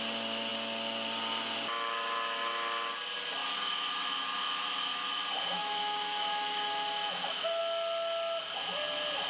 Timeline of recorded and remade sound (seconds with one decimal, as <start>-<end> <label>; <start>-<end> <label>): 0.0-3.4 recorded; 3.4-5.1 remade; 5.1-5.6 recorded; 5.6-7.6 remade; 7.6-9.3 recorded